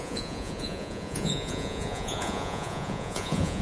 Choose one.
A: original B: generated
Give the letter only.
B